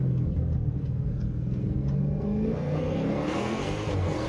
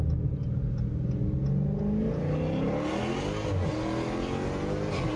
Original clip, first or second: second